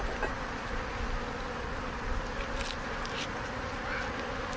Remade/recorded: recorded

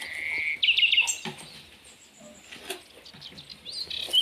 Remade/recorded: recorded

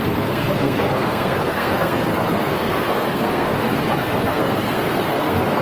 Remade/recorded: remade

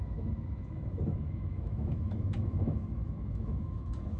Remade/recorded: remade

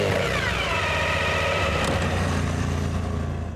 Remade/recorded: recorded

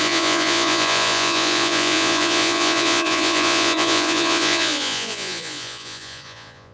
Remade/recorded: remade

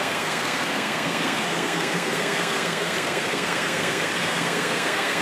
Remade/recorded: remade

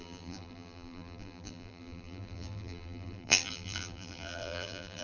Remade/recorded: remade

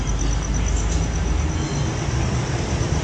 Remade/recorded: recorded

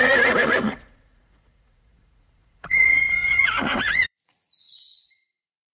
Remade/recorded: remade